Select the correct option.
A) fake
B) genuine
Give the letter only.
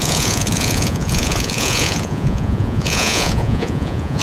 A